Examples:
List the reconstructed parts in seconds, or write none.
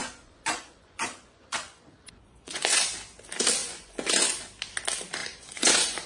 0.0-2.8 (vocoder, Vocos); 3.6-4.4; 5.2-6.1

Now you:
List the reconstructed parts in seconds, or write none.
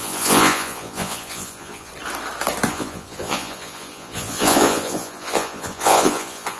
0.0-1.9 (vocoder, Vocos); 2.7-6.6